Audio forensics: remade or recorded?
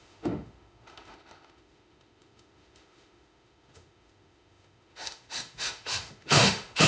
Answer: remade